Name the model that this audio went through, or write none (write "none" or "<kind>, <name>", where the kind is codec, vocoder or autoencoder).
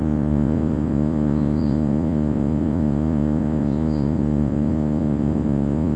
vocoder, Vocos